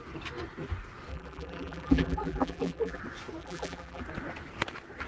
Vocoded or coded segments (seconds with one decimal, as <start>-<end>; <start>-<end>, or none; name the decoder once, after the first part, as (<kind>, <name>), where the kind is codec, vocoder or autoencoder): 1.1-3.0 (vocoder, BigVGAN v2); 3.4-4.0